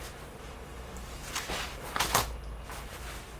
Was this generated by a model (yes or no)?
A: no